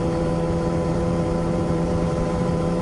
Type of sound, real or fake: fake